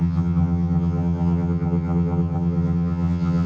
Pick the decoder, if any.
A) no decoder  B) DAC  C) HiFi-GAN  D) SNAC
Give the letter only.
C